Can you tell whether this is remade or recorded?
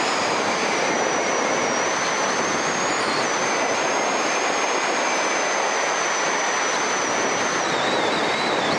recorded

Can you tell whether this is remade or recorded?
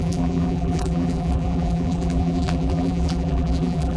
remade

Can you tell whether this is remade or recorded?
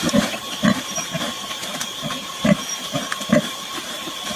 remade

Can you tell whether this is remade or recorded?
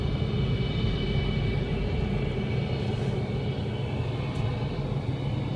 recorded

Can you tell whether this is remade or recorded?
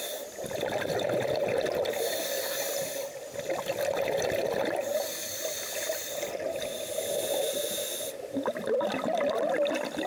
recorded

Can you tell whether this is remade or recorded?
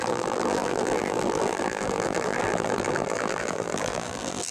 remade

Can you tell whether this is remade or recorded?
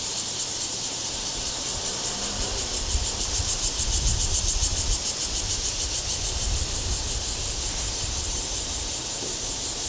remade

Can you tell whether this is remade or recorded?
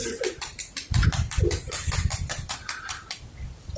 remade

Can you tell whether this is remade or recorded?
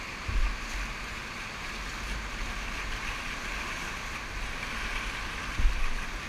recorded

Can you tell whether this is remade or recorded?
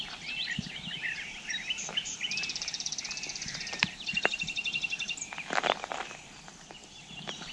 remade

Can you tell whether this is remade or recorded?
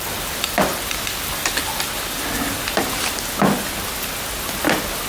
recorded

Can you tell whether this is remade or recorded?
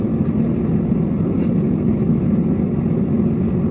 recorded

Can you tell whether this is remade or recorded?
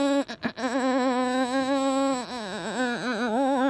recorded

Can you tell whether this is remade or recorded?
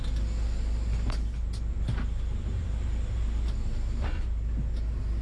recorded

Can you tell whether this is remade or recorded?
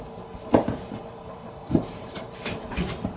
remade